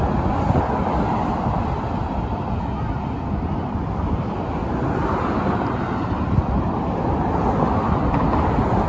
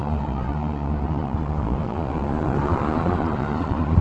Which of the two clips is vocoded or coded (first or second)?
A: second